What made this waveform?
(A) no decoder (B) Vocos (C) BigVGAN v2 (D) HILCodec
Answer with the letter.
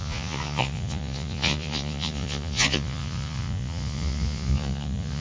B